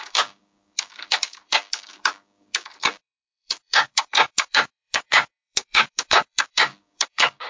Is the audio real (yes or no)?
no